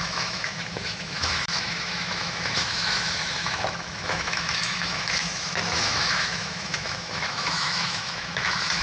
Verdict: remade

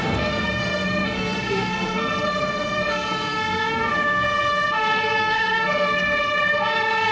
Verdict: remade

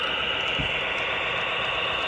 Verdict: recorded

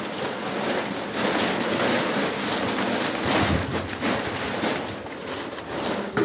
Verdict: recorded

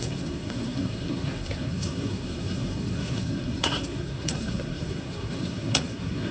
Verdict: remade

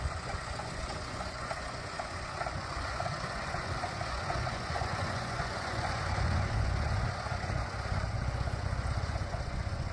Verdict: remade